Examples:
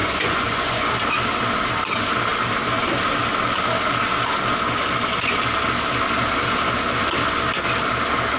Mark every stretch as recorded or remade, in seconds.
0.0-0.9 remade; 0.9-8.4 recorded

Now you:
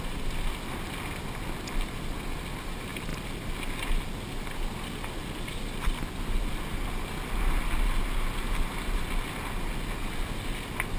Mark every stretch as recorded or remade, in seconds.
0.0-11.0 recorded

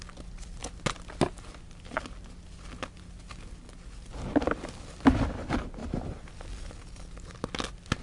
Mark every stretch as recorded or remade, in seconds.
0.0-8.0 recorded